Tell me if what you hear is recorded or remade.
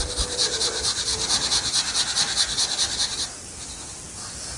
recorded